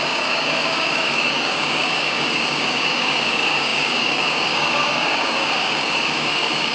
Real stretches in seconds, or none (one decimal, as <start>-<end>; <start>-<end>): none